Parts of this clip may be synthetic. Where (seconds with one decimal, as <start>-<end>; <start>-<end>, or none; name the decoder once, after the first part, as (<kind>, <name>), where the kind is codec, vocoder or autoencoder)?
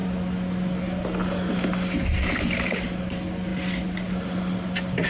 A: none